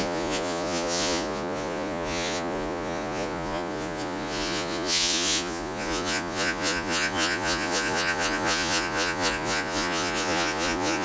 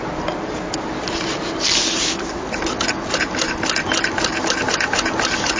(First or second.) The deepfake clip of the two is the first